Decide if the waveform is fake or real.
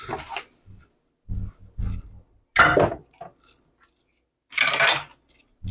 real